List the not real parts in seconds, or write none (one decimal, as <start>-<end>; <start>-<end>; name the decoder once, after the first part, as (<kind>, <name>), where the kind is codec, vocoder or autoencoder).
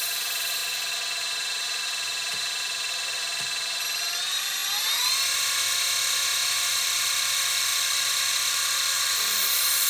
0.0-0.6 (vocoder, BigVGAN v2); 1.2-4.6; 6.7-9.9